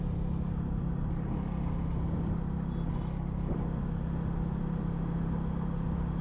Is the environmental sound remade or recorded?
recorded